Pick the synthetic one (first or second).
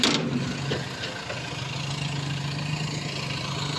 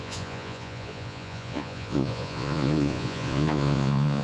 second